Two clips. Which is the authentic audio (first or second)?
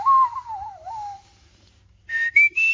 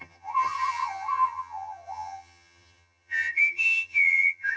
first